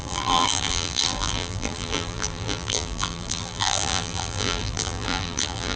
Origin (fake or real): fake